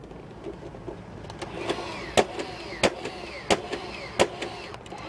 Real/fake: real